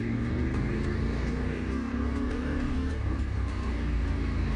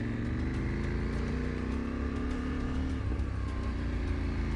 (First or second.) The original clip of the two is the second